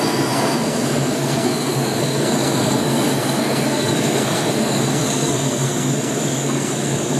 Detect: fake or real fake